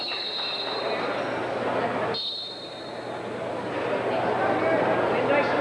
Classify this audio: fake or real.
real